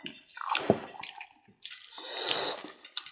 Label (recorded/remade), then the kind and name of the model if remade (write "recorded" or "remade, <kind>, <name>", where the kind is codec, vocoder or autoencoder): recorded